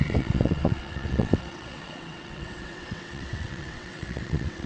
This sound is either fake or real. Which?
fake